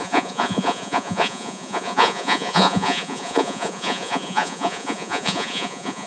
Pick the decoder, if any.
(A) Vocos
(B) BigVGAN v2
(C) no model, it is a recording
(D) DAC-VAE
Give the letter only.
A